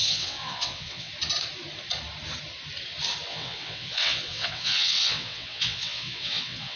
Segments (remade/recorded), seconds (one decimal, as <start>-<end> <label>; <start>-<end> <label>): 0.0-1.1 remade; 1.1-3.3 recorded; 3.3-6.8 remade